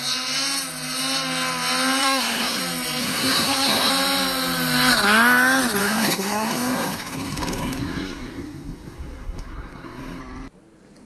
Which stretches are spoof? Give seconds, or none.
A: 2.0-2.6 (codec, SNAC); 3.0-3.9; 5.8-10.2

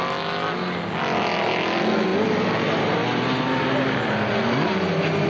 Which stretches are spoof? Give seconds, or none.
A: none

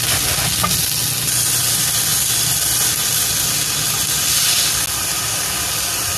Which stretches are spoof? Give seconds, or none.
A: none

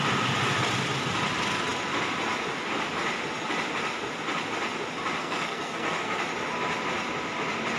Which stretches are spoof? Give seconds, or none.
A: 5.2-6.2 (codec, SNAC)

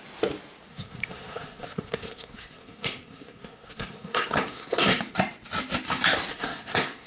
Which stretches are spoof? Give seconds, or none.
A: 0.7-5.0 (codec, SNAC); 6.3-7.1

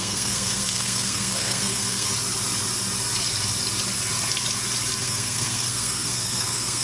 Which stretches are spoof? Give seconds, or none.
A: 0.0-2.1 (codec, SNAC); 5.0-6.8